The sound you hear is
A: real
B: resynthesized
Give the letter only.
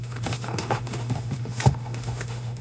B